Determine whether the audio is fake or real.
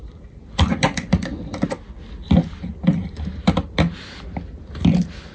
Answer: real